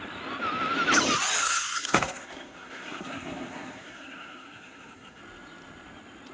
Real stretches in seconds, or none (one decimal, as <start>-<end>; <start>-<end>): 0.0-1.4; 5.2-6.3

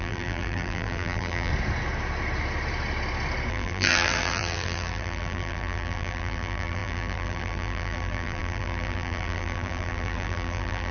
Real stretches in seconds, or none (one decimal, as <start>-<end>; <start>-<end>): 1.5-3.5

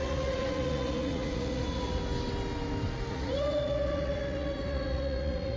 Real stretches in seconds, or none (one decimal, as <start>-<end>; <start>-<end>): 2.0-3.1

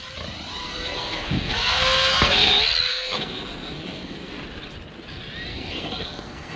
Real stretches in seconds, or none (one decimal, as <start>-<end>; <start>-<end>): 0.0-0.6; 2.5-2.9; 4.3-5.5

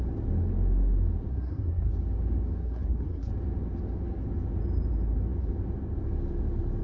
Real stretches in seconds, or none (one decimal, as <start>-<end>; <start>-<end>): 0.0-1.3; 1.9-2.6; 3.3-6.8

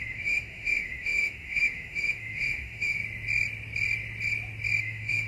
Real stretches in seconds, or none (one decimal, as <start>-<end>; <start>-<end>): 3.0-4.8

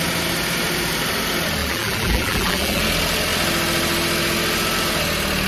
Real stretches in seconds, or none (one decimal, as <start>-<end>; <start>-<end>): 0.0-1.6; 2.8-5.5

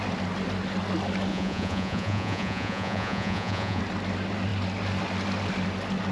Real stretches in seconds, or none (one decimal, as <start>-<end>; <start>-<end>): 0.0-1.3; 3.8-6.1